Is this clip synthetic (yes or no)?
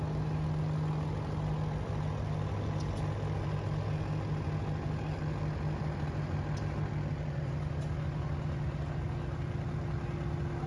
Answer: no